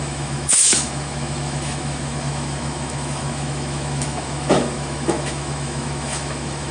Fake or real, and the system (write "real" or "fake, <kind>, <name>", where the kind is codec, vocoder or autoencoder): fake, autoencoder, DAC-VAE